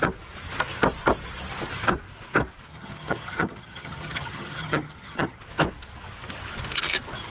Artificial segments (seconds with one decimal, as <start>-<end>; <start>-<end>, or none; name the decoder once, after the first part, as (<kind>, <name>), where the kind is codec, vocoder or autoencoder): 2.7-5.4 (vocoder, HiFi-GAN)